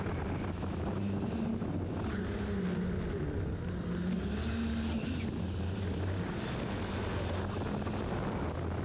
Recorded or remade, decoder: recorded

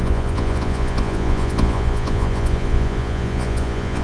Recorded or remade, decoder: remade, vocoder, Vocos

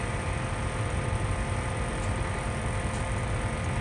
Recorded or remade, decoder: recorded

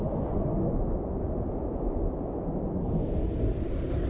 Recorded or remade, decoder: recorded